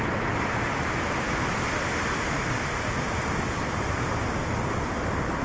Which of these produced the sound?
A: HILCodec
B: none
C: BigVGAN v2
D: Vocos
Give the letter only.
B